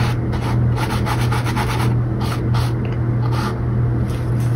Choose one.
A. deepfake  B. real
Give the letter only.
B